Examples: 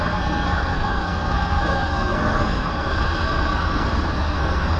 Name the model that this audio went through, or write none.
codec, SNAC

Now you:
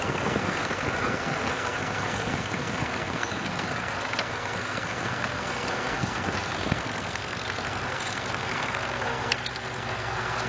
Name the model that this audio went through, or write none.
codec, SNAC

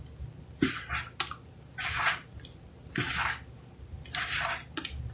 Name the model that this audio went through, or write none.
none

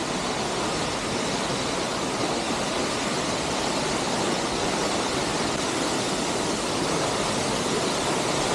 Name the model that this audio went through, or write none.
none